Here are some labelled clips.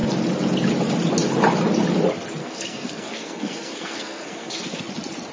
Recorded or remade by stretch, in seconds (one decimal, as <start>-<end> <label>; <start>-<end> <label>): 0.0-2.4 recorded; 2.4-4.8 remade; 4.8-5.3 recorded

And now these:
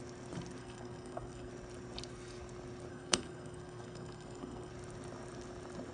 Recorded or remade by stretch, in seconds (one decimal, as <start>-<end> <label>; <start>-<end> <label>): 0.0-0.6 recorded; 0.6-1.5 remade; 1.5-2.9 recorded; 2.9-4.7 remade; 4.7-5.9 recorded

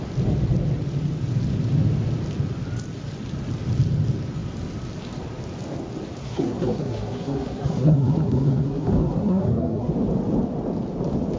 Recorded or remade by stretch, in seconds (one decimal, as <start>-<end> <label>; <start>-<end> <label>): 0.0-6.2 recorded; 6.2-9.9 remade; 9.9-11.4 recorded

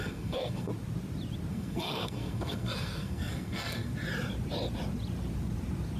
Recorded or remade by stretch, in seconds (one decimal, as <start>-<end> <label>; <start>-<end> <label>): 0.0-0.7 remade; 0.7-1.5 recorded; 1.5-3.9 remade; 3.9-6.0 recorded